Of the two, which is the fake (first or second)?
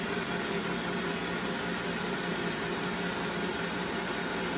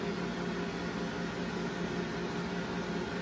first